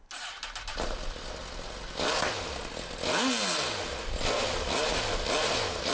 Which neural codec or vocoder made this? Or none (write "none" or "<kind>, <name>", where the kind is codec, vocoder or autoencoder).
none